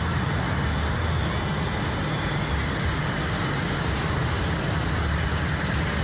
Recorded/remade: recorded